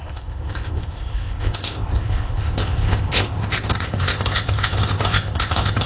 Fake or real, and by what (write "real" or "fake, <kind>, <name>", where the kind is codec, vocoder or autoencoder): fake, codec, ZipCodec